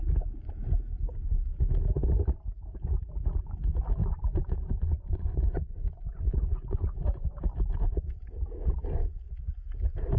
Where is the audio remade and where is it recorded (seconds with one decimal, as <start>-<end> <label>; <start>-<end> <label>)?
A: 0.0-4.0 recorded; 4.0-7.4 remade; 7.4-10.2 recorded